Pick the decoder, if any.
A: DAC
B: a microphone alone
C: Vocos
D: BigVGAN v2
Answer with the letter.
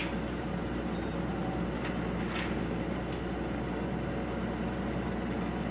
B